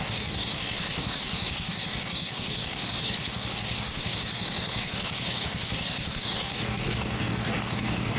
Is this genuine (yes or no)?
no